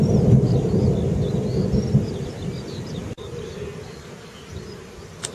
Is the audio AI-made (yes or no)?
no